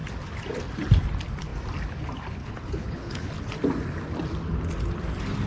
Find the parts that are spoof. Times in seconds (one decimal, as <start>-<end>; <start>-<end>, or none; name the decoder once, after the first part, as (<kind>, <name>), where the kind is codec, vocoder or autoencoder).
2.4-3.3 (codec, HILCodec)

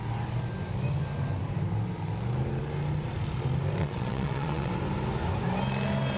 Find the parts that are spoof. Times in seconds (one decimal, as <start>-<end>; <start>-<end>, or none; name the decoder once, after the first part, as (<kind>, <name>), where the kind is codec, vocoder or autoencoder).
3.8-4.7 (vocoder, WaveNeXt)

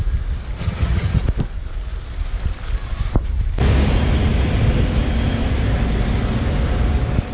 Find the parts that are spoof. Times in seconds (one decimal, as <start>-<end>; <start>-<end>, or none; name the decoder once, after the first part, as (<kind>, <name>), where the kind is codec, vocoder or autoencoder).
0.6-1.2 (vocoder, HiFi-GAN)

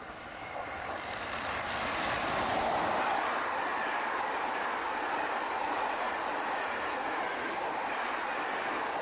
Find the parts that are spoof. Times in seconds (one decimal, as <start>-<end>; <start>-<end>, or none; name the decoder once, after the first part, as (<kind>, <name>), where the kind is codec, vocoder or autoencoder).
5.5-7.5 (vocoder, Vocos)

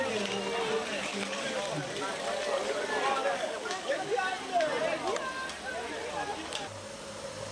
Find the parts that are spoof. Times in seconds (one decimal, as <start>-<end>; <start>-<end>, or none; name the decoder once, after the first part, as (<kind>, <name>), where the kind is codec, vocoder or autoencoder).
1.1-1.6 (codec, DAC); 3.2-4.2